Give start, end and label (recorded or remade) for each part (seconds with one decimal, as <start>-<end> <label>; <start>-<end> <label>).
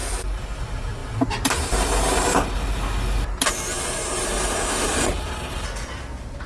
0.0-6.5 recorded